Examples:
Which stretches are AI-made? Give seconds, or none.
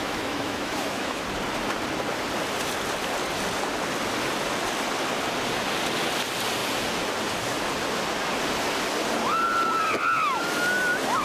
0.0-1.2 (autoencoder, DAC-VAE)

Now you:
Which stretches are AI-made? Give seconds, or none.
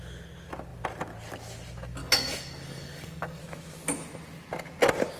2.0-3.4 (codec, DAC)